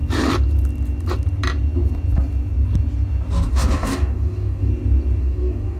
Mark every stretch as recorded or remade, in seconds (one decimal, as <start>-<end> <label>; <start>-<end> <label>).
0.0-3.5 recorded; 3.5-4.7 remade; 4.7-5.2 recorded; 5.2-5.8 remade